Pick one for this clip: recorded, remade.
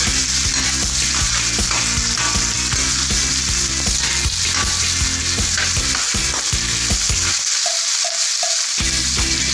recorded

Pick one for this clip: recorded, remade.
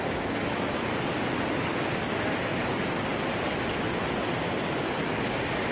recorded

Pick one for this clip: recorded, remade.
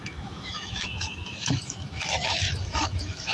remade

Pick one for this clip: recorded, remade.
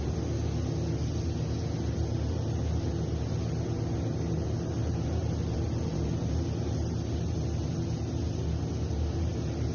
recorded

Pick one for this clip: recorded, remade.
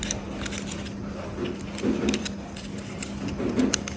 recorded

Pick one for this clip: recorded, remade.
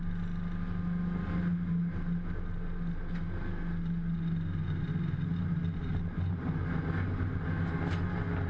recorded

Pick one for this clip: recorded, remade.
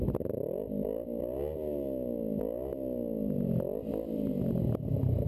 recorded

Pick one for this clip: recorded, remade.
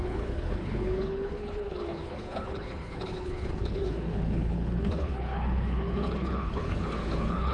remade